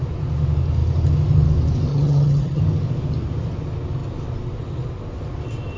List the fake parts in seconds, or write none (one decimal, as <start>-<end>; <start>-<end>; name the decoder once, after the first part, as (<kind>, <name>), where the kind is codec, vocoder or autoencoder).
1.9-2.6 (vocoder, HiFi-GAN)